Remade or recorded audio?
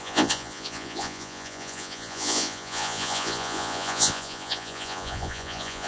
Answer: remade